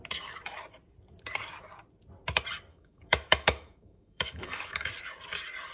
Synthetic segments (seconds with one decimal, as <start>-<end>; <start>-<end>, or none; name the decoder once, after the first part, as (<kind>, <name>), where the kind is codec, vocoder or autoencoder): 2.7-4.9 (autoencoder, DAC-VAE)